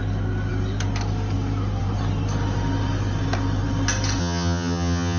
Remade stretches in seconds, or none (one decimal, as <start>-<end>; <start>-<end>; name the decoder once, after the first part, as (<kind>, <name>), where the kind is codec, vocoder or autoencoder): 4.2-5.2 (vocoder, HiFi-GAN)